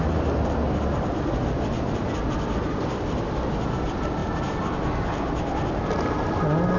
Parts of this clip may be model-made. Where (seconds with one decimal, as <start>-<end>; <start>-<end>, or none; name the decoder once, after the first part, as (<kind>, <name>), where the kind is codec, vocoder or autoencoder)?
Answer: none